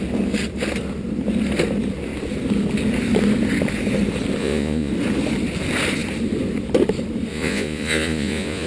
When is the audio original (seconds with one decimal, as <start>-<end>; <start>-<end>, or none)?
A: 0.0-4.4; 4.9-7.3